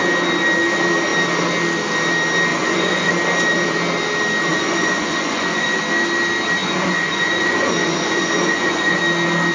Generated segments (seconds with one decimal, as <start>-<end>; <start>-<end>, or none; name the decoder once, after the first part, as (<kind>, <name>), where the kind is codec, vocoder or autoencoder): 2.5-3.1 (vocoder, Vocos); 4.5-5.8; 6.6-9.0